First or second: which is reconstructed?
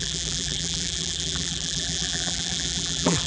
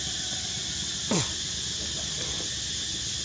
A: first